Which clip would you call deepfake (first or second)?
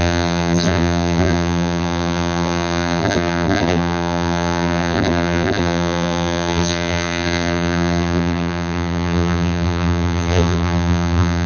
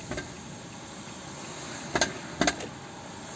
first